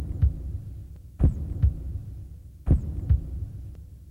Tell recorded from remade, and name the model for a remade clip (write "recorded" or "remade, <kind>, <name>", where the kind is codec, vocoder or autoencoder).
recorded